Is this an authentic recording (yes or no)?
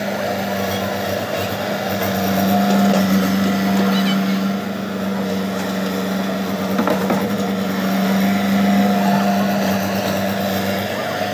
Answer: yes